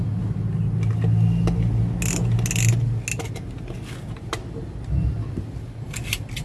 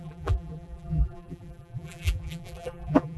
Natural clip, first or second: first